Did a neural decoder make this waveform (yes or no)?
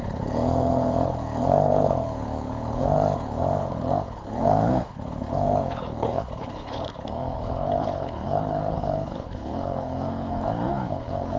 yes